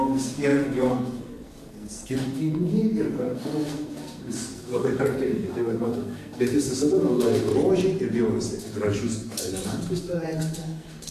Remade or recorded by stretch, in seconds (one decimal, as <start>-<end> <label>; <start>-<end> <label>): 0.0-7.5 remade; 7.5-8.6 recorded; 8.6-11.1 remade

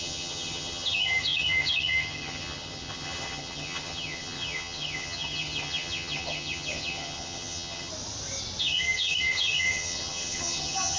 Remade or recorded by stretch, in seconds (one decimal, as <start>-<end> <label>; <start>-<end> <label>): 0.0-7.9 remade; 7.9-8.6 recorded; 8.6-11.0 remade

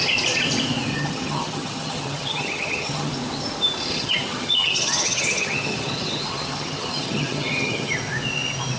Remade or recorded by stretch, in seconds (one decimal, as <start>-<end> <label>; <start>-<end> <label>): 0.0-0.9 recorded; 0.9-3.1 remade; 3.1-3.9 recorded; 3.9-7.9 remade; 7.9-8.8 recorded